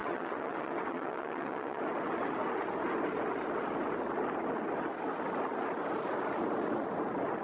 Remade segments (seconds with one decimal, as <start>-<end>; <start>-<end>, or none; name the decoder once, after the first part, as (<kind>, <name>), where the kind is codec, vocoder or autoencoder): 0.0-1.8 (vocoder, WaveNeXt)